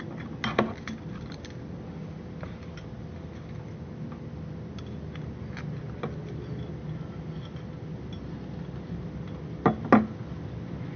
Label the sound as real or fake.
real